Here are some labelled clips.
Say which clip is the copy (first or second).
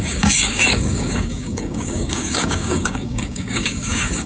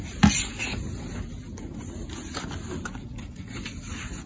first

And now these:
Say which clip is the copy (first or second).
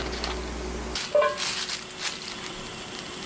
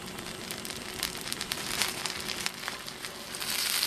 second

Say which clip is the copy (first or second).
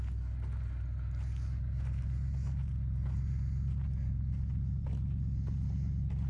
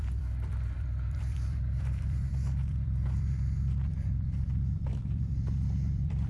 second